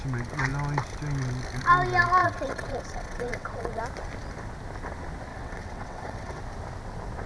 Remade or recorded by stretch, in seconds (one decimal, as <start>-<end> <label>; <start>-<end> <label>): 0.0-2.2 recorded; 2.2-3.8 remade; 3.8-5.3 recorded; 5.3-6.4 remade; 6.4-7.3 recorded